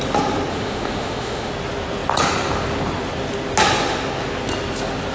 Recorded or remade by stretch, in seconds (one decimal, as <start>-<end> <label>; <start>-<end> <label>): 0.0-0.5 recorded; 0.5-1.5 remade; 1.5-5.1 recorded

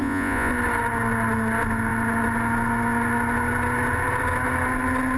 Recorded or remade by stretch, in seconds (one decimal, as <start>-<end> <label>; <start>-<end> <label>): 0.0-0.5 remade; 0.5-5.2 recorded

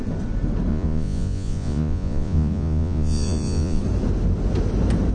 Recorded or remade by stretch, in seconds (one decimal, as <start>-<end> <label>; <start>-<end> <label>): 0.0-0.7 recorded; 0.7-3.8 remade; 3.8-5.1 recorded

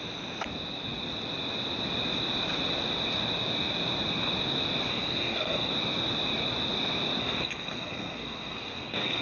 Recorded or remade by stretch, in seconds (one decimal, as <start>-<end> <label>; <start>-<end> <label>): 0.0-4.9 recorded; 4.9-5.7 remade; 5.7-7.2 recorded; 7.2-9.2 remade

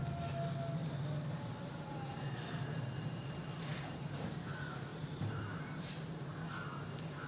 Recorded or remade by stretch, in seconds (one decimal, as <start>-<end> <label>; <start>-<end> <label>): 0.0-0.8 recorded; 0.8-2.4 remade; 2.4-3.7 recorded; 3.7-4.3 remade; 4.3-4.9 recorded; 4.9-5.9 remade; 5.9-7.3 recorded

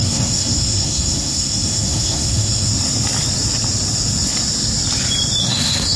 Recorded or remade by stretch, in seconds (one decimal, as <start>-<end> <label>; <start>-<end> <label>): 0.0-2.7 remade; 2.7-5.4 recorded; 5.4-6.0 remade